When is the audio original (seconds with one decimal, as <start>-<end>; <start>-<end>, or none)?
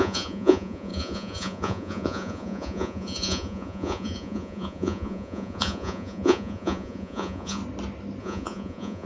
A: 7.6-8.2